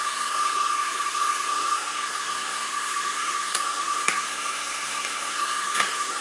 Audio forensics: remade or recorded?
remade